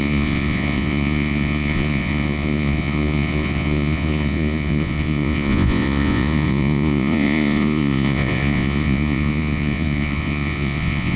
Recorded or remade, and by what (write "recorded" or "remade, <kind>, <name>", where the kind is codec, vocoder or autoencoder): remade, vocoder, Vocos